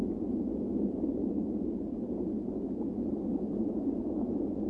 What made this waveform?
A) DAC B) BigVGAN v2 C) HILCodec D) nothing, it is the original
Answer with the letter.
D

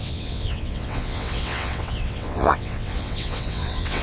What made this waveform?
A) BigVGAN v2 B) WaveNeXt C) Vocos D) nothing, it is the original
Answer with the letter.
B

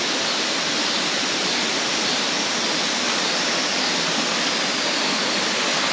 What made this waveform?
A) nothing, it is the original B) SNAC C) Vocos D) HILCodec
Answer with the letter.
A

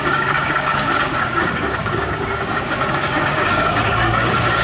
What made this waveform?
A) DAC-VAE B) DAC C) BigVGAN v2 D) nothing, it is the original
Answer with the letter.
B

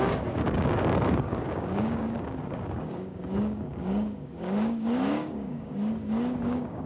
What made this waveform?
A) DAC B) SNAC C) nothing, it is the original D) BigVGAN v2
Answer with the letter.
A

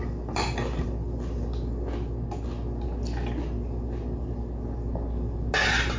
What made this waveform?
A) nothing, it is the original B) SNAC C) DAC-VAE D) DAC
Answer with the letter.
A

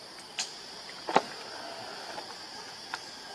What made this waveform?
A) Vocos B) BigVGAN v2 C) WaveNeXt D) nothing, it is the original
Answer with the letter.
D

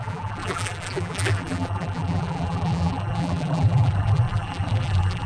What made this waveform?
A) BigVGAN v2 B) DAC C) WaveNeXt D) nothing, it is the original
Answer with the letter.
A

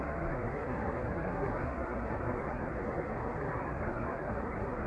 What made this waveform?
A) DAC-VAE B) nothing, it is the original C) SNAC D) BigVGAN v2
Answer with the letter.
C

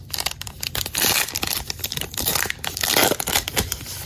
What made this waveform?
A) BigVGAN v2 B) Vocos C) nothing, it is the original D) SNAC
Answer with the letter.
A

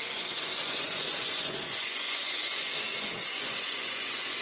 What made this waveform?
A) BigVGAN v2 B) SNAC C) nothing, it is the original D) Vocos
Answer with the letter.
D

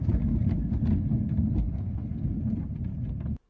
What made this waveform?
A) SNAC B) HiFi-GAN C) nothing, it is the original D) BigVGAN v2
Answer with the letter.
C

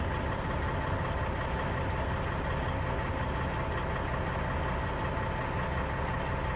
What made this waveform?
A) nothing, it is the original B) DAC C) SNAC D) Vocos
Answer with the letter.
A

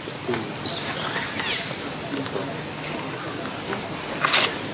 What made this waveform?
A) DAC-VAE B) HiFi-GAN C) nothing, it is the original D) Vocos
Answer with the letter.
C